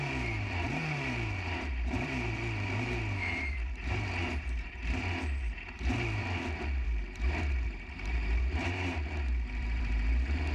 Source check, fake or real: fake